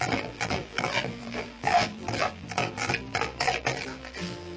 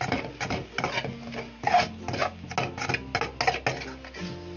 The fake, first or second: first